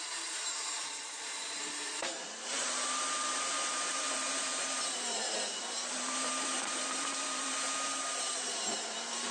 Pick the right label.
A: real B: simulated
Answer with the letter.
B